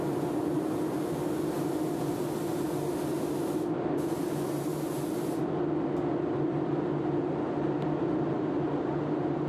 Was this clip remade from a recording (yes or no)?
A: no